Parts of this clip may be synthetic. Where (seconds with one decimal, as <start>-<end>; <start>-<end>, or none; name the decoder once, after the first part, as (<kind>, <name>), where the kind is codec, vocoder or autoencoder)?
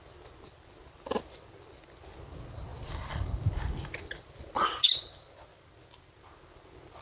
none